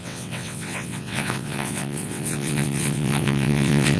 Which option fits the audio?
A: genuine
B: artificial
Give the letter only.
B